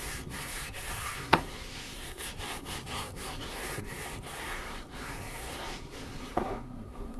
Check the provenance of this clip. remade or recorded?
remade